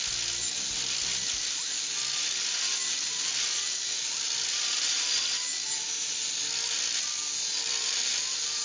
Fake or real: real